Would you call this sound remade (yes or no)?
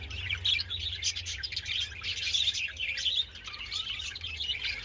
no